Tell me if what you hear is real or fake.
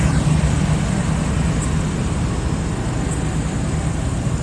real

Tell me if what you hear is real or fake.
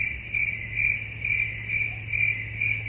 real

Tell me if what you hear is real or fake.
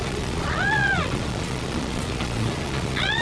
fake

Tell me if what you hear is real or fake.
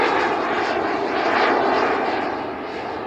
real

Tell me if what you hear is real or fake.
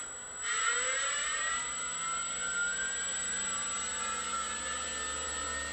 real